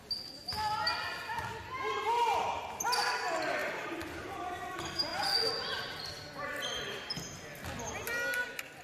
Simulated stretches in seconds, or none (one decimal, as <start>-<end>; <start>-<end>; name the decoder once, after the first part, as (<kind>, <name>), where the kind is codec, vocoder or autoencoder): none